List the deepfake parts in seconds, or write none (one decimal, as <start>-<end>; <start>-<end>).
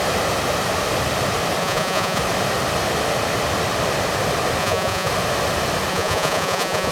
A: 1.6-2.2; 4.6-5.1; 5.9-6.9